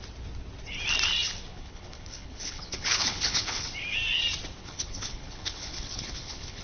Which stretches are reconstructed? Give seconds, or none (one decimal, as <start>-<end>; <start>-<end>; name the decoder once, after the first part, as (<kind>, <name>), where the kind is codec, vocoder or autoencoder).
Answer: 1.5-3.7 (codec, HILCodec); 4.6-6.6